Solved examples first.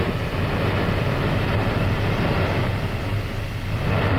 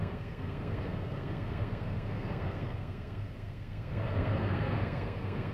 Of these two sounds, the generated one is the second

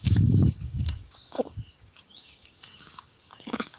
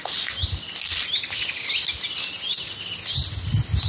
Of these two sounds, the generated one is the first